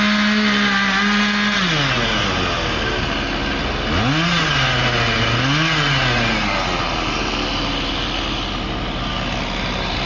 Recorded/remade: recorded